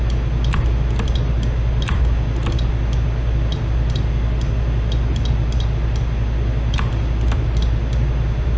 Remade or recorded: recorded